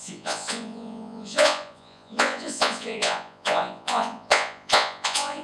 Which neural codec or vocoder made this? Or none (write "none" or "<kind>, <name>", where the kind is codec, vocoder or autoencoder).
vocoder, Vocos